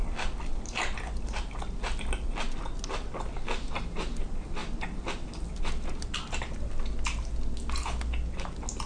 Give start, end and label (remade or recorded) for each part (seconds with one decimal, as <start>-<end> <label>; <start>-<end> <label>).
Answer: 0.0-8.9 recorded